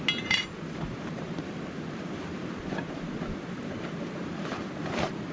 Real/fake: real